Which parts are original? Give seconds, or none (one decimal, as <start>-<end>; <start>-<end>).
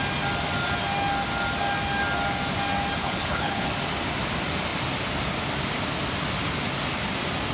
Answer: 0.0-3.0; 3.7-7.5